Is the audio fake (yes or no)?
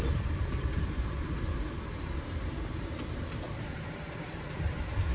yes